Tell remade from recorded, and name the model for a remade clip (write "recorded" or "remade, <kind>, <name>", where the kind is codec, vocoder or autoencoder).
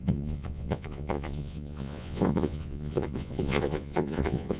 remade, vocoder, Vocos